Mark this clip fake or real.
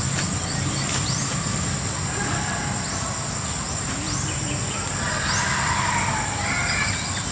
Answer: real